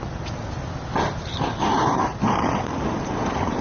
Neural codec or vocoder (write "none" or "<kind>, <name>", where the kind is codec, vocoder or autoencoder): none